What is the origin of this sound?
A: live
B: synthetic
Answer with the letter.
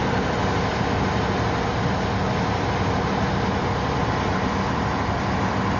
A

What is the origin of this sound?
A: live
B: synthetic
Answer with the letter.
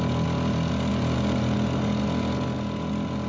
A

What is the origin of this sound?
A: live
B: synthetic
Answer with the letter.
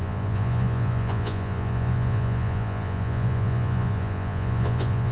B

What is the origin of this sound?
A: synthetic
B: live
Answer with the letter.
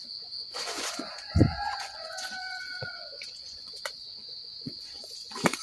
A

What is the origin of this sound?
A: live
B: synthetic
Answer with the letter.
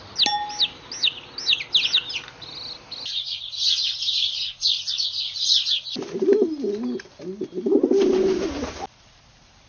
A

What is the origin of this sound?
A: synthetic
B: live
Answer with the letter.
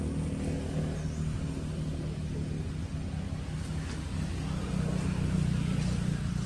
B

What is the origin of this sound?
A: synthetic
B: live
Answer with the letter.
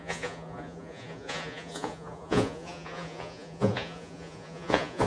A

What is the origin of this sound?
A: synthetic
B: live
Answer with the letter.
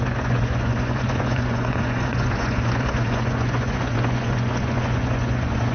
A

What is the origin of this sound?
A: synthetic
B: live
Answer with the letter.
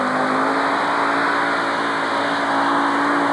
B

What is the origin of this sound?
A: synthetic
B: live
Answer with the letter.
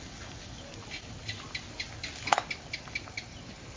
B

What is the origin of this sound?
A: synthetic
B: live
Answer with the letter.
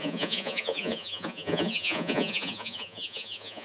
A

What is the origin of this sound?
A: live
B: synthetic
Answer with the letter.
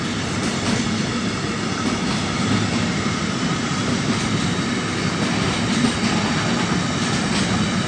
A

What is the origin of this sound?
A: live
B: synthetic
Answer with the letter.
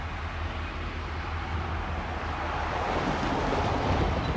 A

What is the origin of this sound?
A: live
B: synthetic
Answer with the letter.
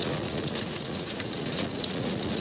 B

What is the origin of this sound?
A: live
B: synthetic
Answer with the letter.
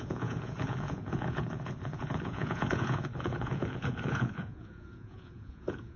B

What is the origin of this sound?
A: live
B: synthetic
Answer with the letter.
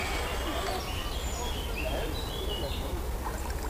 A